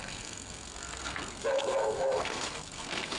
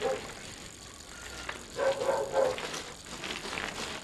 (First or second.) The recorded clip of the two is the second